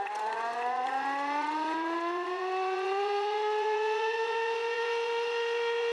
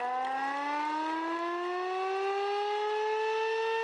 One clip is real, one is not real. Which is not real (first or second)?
first